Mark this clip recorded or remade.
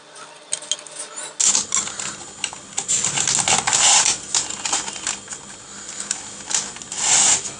recorded